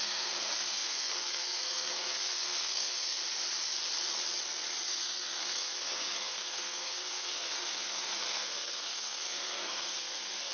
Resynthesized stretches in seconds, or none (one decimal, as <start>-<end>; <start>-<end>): 0.0-3.2; 4.9-10.5